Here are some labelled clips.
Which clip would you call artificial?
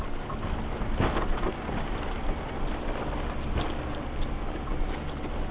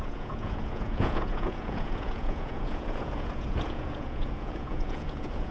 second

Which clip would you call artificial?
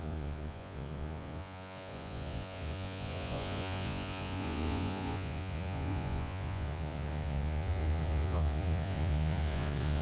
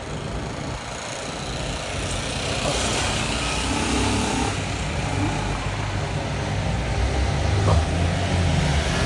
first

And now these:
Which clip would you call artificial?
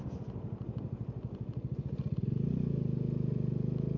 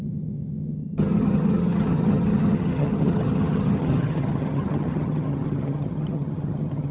second